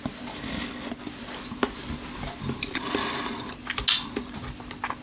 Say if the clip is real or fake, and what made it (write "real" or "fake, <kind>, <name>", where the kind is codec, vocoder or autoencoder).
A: real